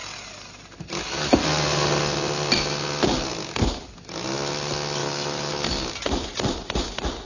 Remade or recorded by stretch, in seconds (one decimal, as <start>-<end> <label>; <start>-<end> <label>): 0.0-5.0 recorded; 5.0-5.5 remade; 5.5-7.2 recorded